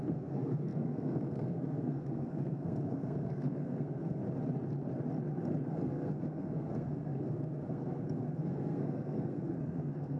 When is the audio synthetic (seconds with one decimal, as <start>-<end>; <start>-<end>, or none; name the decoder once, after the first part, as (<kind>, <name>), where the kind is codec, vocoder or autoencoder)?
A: 0.0-4.2 (codec, SNAC); 5.7-10.2